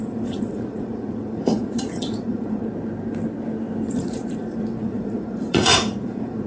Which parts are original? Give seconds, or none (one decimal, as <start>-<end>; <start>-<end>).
2.6-3.9